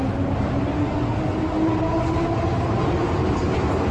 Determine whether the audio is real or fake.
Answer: real